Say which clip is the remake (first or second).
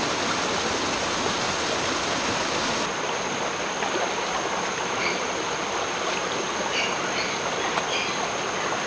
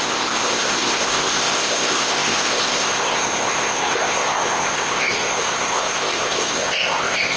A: second